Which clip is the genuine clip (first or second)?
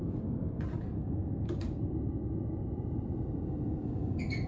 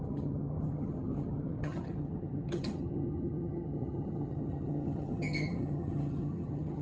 first